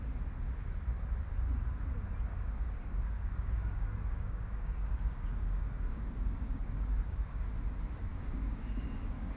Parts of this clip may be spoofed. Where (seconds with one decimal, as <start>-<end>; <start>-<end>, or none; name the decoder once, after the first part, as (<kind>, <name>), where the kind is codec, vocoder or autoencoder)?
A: 2.3-7.4 (codec, DAC); 8.1-9.4